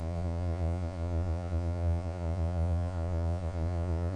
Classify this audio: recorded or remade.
remade